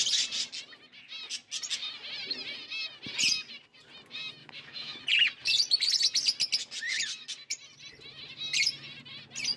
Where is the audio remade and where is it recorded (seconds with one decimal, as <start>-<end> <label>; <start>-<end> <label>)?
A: 0.0-4.4 recorded; 4.4-5.0 remade; 5.0-9.6 recorded